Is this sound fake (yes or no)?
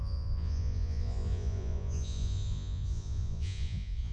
yes